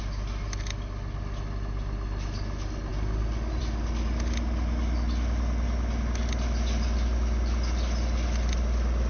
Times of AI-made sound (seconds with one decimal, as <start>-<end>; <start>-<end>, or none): none